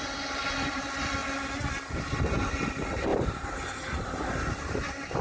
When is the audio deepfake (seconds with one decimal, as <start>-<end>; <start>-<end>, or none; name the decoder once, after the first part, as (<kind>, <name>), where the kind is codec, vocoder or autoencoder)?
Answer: 0.0-1.2 (vocoder, BigVGAN v2); 1.8-5.2